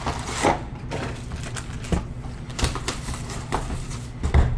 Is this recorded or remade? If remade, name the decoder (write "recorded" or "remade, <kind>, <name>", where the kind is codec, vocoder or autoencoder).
remade, vocoder, BigVGAN v2